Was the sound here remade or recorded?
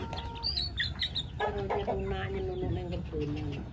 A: recorded